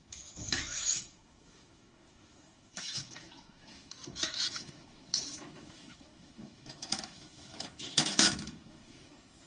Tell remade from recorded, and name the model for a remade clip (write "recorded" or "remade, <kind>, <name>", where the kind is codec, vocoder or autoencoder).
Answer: remade, autoencoder, DAC-VAE